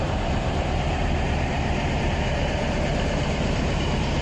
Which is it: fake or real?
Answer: fake